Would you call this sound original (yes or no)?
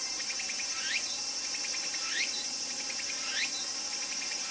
yes